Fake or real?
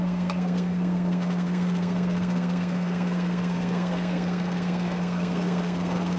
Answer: fake